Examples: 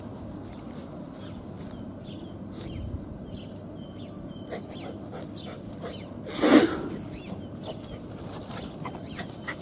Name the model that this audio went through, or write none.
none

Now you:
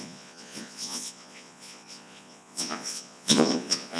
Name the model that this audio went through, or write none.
vocoder, Vocos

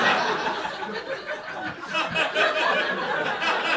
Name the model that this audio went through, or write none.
none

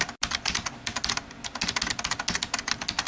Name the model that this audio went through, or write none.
none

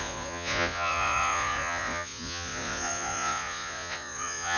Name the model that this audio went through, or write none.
vocoder, Vocos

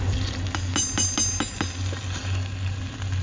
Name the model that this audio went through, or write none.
none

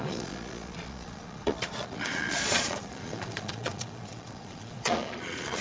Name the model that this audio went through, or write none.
vocoder, Vocos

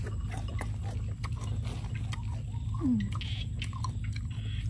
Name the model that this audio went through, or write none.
none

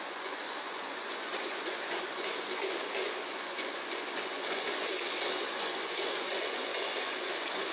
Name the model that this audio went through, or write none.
vocoder, Vocos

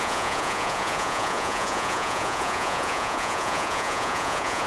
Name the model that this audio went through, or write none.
vocoder, Vocos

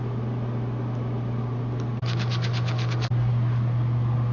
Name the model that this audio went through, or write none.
none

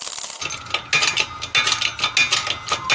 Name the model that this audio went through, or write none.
none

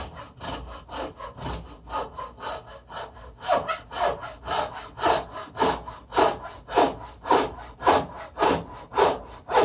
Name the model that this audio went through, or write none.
none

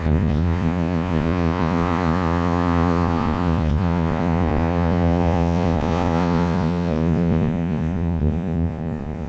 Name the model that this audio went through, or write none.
vocoder, Vocos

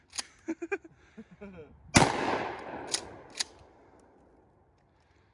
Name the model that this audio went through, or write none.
none